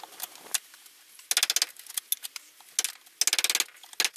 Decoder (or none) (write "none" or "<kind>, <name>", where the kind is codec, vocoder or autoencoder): none